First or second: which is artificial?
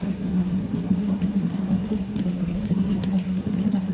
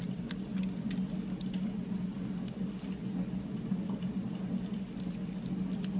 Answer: first